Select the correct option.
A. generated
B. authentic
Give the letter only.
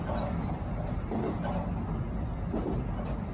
B